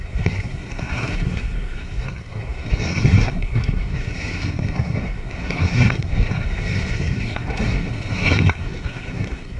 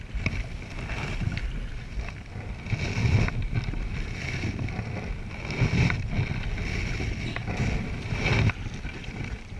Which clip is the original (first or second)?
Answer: second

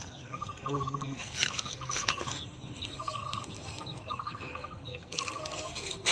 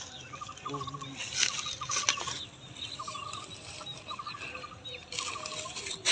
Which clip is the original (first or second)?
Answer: second